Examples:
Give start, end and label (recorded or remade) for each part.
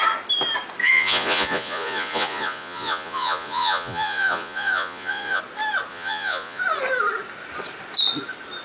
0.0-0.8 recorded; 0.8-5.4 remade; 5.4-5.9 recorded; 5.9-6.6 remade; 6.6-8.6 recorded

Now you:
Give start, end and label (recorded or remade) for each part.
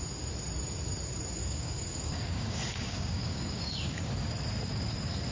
0.0-1.4 recorded; 1.4-4.1 remade; 4.1-5.3 recorded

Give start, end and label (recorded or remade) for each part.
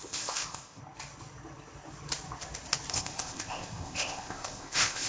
0.0-0.8 remade; 0.8-2.9 recorded; 2.9-5.1 remade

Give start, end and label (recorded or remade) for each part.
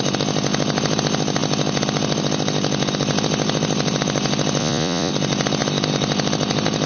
0.0-4.6 recorded; 4.6-5.1 remade; 5.1-6.9 recorded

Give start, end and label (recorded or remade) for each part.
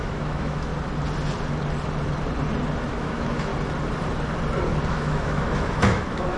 0.0-0.7 remade; 0.7-2.9 recorded; 2.9-3.5 remade; 3.5-4.9 recorded; 4.9-6.4 remade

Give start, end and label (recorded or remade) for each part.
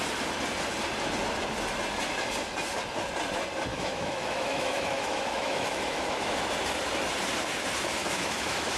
0.0-3.7 recorded; 3.7-6.4 remade; 6.4-8.0 recorded; 8.0-8.8 remade